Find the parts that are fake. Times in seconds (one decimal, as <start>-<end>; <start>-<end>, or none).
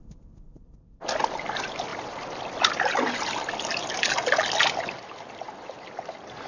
none